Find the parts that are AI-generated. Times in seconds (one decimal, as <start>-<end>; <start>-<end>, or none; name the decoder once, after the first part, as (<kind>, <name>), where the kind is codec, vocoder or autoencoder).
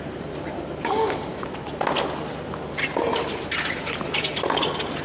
none